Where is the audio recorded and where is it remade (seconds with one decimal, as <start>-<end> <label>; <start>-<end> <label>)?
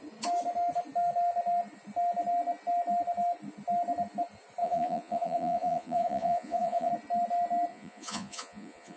0.0-4.6 recorded; 4.6-6.9 remade; 6.9-7.7 recorded; 7.7-9.0 remade